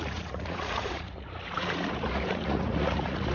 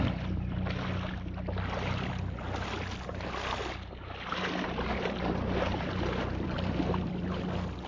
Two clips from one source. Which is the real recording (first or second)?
second